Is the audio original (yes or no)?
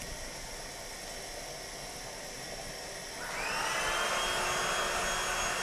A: yes